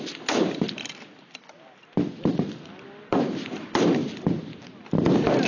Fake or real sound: real